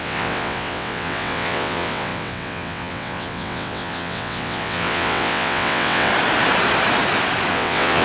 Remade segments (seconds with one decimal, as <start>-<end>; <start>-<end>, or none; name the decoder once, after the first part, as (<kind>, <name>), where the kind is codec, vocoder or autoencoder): 0.0-6.1 (vocoder, WaveNeXt); 7.5-8.0